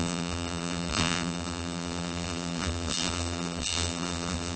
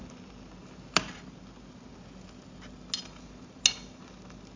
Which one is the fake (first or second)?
first